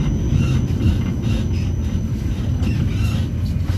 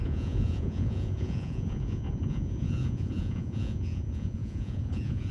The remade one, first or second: second